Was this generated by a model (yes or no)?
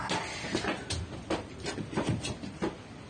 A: no